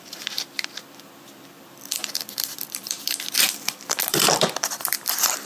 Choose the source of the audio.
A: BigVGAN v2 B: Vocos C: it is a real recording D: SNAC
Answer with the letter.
A